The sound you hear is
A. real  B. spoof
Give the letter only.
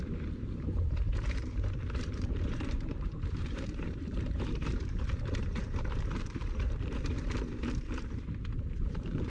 B